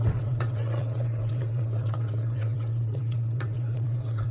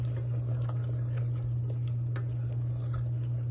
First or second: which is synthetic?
first